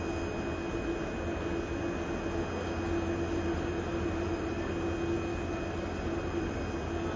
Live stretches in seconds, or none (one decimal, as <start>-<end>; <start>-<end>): 0.0-3.5; 4.7-5.3; 6.6-7.2